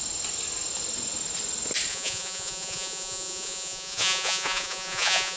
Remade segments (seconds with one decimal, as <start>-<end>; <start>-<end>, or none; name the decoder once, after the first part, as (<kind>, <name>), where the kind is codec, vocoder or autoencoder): 1.9-5.4 (vocoder, Vocos)